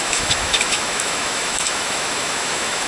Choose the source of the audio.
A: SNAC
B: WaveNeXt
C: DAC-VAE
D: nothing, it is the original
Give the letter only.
C